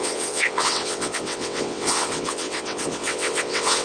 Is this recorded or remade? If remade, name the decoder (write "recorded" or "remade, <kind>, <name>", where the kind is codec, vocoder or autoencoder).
remade, vocoder, WaveNeXt